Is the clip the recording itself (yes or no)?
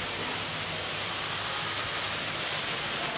yes